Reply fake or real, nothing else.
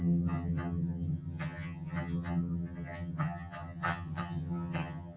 fake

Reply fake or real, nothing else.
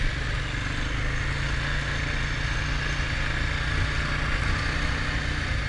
real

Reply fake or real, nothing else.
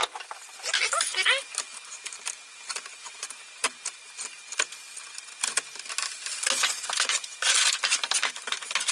real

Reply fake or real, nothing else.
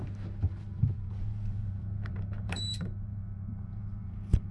fake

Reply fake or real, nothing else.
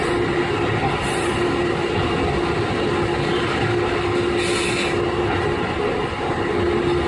real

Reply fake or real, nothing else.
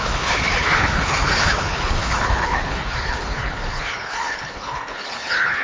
fake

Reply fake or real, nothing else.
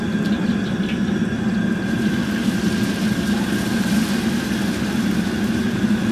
fake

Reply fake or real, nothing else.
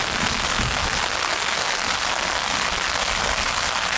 real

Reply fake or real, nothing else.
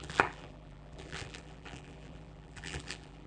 fake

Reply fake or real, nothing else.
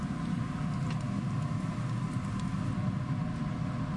real